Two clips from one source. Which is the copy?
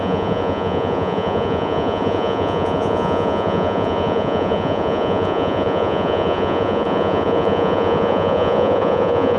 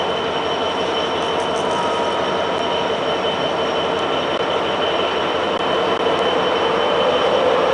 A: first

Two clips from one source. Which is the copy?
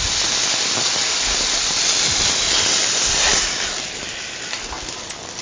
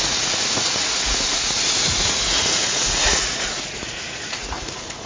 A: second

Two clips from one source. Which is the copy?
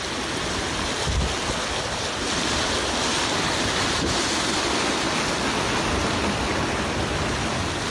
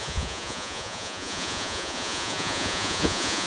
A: second